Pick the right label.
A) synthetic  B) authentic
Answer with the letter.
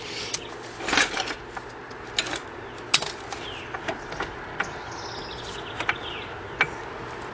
B